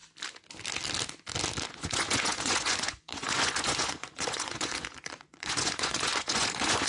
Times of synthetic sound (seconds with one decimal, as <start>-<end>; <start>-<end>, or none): 1.7-6.9